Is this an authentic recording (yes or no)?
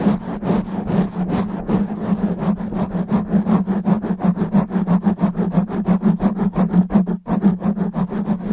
yes